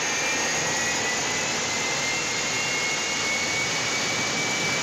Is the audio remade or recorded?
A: recorded